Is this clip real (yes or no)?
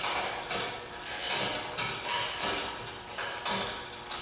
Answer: yes